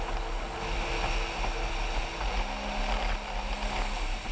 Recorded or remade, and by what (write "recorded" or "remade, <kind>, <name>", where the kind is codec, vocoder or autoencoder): recorded